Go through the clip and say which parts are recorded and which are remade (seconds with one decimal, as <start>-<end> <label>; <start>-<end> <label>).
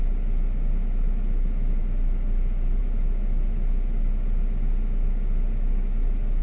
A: 0.0-6.4 recorded